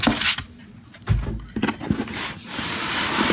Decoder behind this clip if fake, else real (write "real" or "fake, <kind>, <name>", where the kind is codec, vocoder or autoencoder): real